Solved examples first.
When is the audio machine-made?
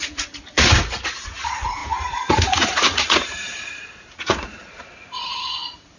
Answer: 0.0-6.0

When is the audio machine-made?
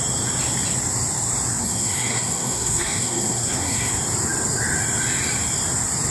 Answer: 1.6-3.9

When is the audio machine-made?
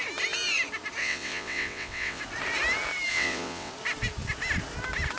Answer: 1.0-2.2; 3.1-3.7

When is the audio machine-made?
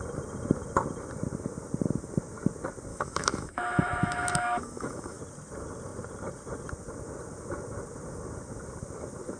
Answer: 2.9-5.2